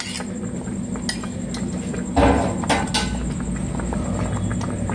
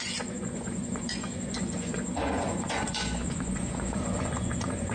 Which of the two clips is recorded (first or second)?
first